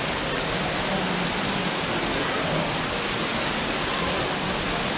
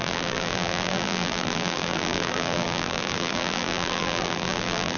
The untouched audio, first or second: first